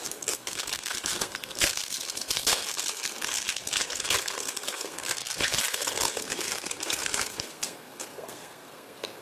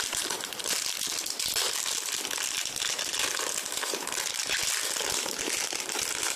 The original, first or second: second